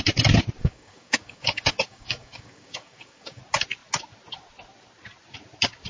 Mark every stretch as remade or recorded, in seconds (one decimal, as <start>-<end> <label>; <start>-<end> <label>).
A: 0.0-0.6 recorded; 0.6-3.4 remade; 3.4-5.9 recorded